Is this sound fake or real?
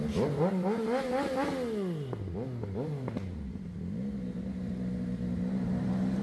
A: real